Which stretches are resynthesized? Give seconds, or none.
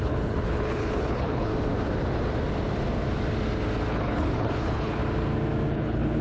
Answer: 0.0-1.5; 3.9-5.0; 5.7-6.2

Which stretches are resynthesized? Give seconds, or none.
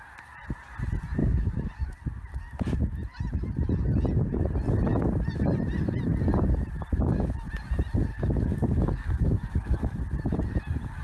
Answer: 1.2-1.7; 8.1-10.0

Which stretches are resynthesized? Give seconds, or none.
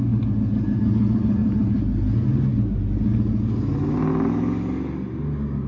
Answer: none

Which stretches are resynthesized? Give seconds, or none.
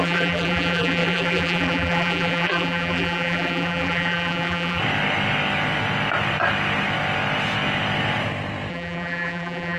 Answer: 0.0-4.8; 8.7-9.8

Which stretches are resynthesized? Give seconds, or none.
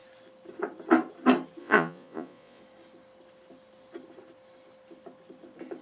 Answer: 1.6-2.6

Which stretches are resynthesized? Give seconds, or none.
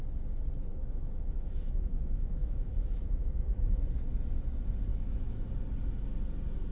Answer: 0.7-3.8; 4.9-5.5